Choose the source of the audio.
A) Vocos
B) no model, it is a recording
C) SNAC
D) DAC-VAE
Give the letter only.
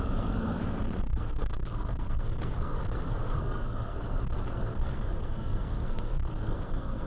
C